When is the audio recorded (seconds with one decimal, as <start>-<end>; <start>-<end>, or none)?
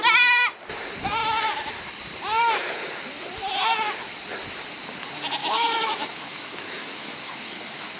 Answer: 0.0-5.4